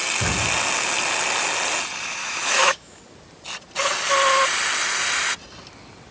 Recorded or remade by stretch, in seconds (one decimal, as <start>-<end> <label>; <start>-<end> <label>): 0.0-2.2 recorded; 2.2-3.0 remade; 3.0-6.1 recorded